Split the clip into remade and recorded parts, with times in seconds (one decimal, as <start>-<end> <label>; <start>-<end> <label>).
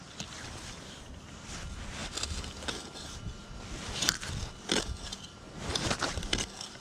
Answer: 0.0-6.8 recorded